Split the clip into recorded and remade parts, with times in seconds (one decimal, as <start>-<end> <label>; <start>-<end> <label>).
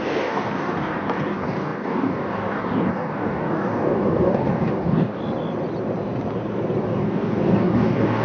0.0-5.2 remade; 5.2-6.8 recorded; 6.8-8.2 remade